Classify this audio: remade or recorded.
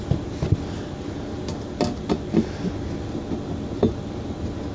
recorded